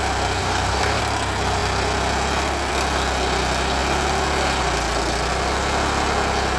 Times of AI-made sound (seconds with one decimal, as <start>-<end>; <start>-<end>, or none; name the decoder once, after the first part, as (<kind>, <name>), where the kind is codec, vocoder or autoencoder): 0.4-1.0 (codec, DAC)